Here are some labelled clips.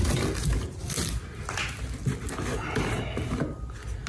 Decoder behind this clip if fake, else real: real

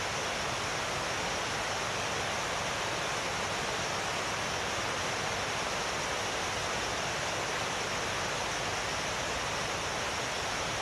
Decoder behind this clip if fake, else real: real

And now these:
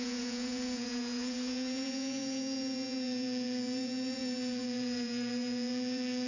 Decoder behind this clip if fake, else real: fake, vocoder, Vocos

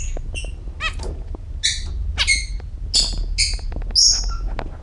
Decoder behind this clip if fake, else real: real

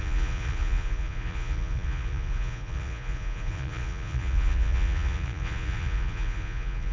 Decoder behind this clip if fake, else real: fake, vocoder, Vocos